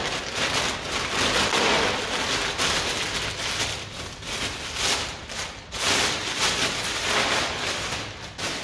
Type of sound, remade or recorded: recorded